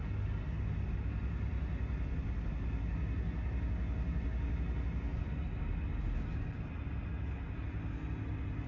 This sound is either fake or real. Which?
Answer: real